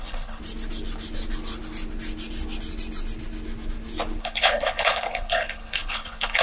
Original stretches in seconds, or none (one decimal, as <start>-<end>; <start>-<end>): 0.4-4.2